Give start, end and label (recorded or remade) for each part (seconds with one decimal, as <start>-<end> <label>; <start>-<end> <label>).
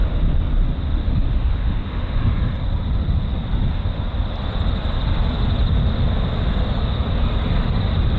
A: 0.0-1.0 recorded; 1.0-2.2 remade; 2.2-8.2 recorded